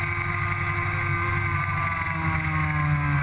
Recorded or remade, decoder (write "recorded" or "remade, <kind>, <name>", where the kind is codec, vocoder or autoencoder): recorded